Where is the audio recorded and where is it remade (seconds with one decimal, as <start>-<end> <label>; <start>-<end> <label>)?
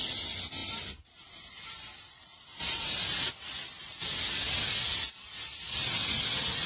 0.0-6.7 recorded